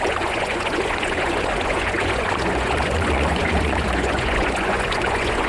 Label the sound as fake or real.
fake